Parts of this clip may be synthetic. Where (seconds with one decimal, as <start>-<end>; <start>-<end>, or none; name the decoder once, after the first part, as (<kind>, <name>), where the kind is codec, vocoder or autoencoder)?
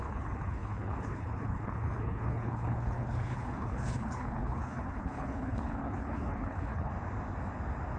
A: 0.0-6.9 (codec, HILCodec)